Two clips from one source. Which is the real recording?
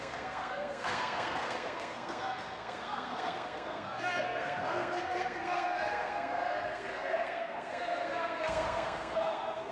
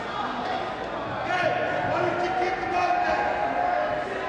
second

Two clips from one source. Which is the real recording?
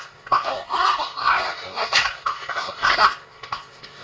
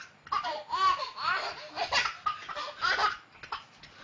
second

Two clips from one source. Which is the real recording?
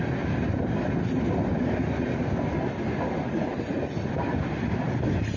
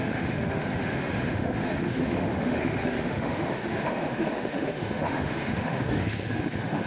first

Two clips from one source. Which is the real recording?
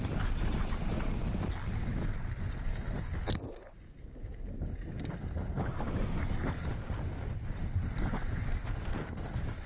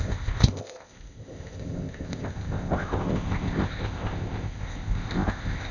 first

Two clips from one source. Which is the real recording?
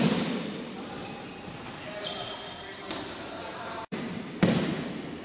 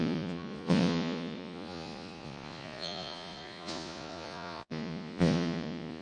first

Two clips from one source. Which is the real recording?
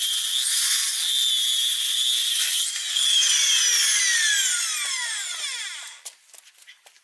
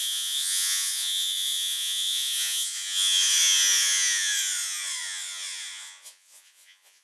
first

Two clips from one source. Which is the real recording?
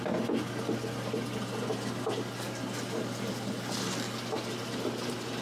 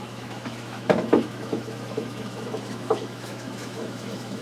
first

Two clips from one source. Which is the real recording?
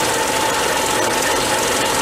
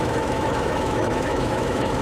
first